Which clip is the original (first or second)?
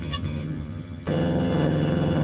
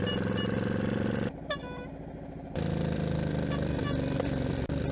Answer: second